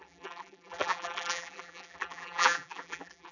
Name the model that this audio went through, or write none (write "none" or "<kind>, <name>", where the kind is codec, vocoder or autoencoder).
vocoder, BigVGAN v2